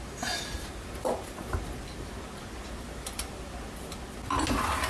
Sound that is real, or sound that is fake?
real